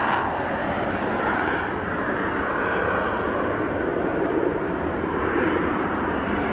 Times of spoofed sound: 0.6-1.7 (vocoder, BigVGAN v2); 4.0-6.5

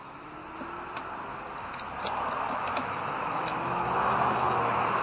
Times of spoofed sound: 0.0-0.4 (autoencoder, DAC-VAE); 2.5-5.0